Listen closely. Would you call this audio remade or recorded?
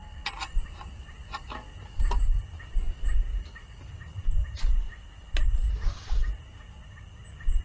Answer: recorded